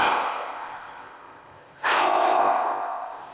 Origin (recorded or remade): remade